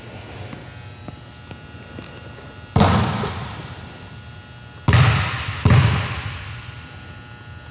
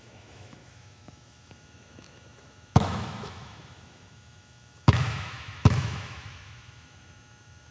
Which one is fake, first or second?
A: second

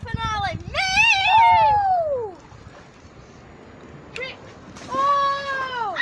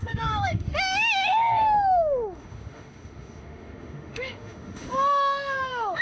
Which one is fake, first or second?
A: second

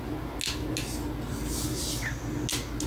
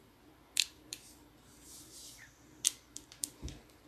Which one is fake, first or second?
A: second